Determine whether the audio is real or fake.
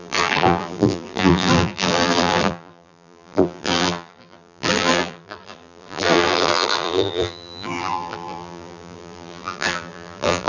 fake